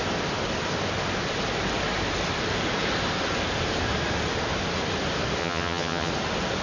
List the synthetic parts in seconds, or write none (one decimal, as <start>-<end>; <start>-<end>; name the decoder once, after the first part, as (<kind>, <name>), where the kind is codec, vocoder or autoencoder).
5.4-6.1 (vocoder, HiFi-GAN)